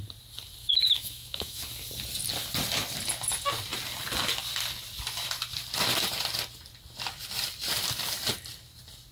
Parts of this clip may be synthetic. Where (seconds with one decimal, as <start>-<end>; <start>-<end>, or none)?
0.6-1.6